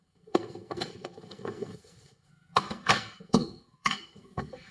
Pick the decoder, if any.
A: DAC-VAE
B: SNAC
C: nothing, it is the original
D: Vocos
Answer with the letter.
B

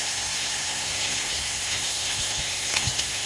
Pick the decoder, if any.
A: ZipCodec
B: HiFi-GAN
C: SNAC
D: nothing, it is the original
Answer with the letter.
C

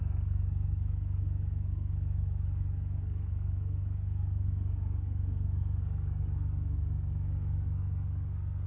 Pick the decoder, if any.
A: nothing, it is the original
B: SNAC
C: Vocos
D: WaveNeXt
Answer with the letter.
B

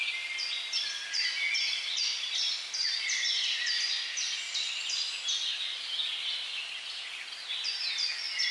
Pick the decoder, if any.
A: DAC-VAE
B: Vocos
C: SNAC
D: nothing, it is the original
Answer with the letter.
D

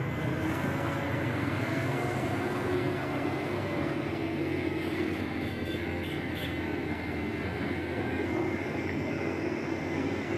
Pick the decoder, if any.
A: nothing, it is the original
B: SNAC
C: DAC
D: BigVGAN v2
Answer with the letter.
B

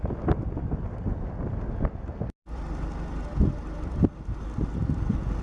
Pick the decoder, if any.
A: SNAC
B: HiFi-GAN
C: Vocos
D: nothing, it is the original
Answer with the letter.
D